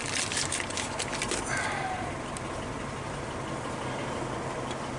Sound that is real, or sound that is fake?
real